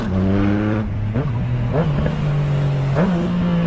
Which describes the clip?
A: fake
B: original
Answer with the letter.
B